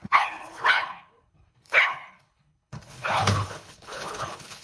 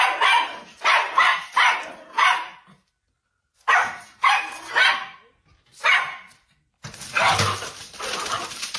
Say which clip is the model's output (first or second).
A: first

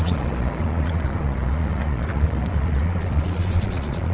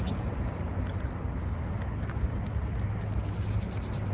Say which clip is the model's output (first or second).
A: first